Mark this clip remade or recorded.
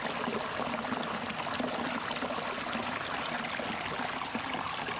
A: recorded